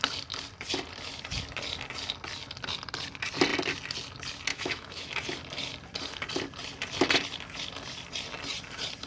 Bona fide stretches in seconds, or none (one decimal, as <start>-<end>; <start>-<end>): 0.0-4.5; 5.1-9.1